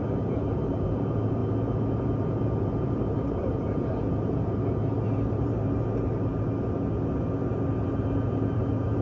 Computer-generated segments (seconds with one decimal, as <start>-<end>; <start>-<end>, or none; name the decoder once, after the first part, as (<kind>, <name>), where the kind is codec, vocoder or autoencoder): 0.0-1.4 (vocoder, BigVGAN v2); 2.0-6.3; 7.9-9.0